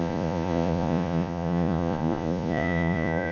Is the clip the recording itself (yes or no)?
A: no